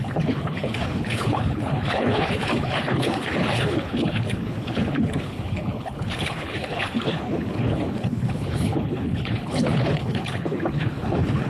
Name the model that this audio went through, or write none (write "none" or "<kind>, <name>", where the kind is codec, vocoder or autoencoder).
codec, HILCodec